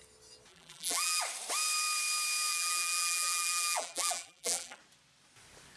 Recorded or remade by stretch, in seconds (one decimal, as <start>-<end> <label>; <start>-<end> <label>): 0.0-0.5 recorded; 0.5-1.2 remade; 1.2-2.5 recorded; 2.5-4.8 remade; 4.8-5.8 recorded